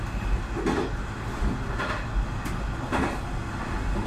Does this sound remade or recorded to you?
recorded